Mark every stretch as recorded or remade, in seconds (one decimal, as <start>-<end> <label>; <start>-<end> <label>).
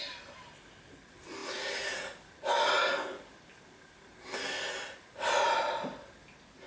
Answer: 0.0-6.7 recorded